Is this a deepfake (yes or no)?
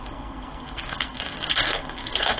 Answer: yes